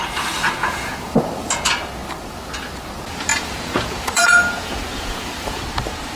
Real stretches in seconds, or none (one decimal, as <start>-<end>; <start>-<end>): 0.0-0.6; 1.2-3.3; 5.6-6.2